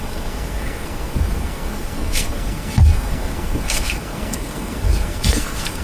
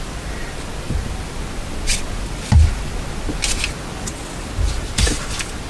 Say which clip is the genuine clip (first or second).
second